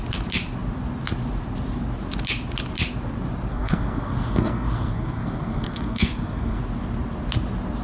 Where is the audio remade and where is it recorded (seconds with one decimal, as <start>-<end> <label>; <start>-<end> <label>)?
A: 0.0-3.5 recorded; 3.5-6.6 remade; 6.6-7.8 recorded